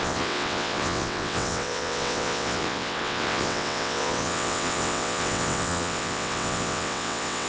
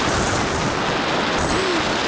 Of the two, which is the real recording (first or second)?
second